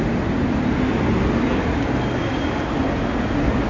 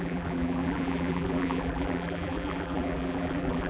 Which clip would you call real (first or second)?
first